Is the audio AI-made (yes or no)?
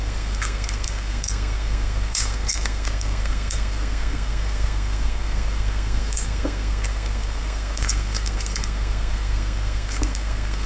yes